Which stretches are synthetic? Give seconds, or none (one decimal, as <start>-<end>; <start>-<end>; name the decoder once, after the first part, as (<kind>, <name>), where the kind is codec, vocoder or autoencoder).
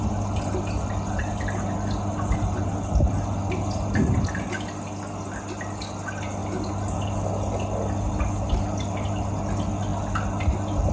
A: none